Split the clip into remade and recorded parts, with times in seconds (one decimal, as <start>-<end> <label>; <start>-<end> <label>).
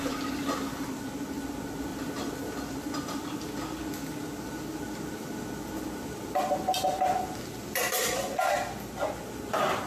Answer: 0.0-1.9 recorded; 1.9-2.7 remade; 2.7-9.9 recorded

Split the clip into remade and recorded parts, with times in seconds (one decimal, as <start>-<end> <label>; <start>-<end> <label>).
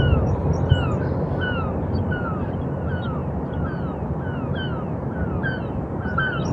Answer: 0.0-0.4 remade; 0.4-1.7 recorded; 1.7-3.2 remade; 3.2-5.7 recorded; 5.7-6.5 remade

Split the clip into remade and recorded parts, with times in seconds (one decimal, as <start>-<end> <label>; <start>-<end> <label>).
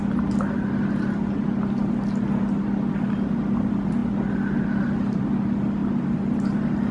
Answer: 0.0-5.8 recorded; 5.8-6.9 remade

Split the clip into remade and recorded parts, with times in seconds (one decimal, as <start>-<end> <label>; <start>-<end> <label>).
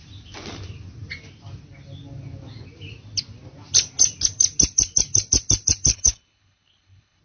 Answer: 0.0-5.9 recorded; 5.9-7.2 remade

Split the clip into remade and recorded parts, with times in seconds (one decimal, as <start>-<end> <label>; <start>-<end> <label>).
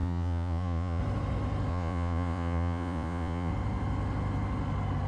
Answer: 0.0-1.0 remade; 1.0-1.7 recorded; 1.7-3.5 remade; 3.5-5.1 recorded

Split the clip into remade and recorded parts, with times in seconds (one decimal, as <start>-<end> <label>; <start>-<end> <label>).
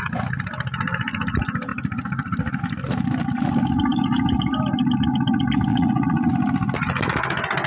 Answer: 0.0-5.7 recorded; 5.7-6.3 remade; 6.3-7.7 recorded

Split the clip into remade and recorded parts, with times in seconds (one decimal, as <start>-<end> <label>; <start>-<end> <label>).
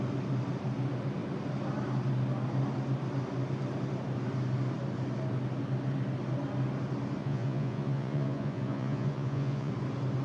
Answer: 0.0-7.2 recorded; 7.2-9.7 remade; 9.7-10.2 recorded